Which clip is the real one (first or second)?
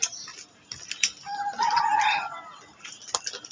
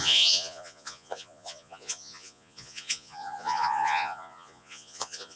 first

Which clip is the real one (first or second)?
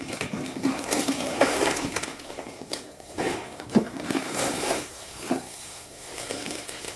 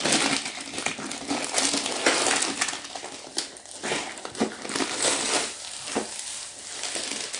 second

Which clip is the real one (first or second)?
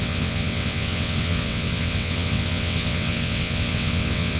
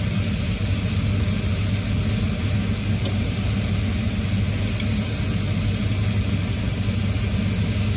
second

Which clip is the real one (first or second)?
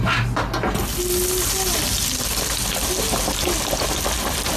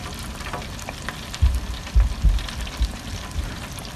first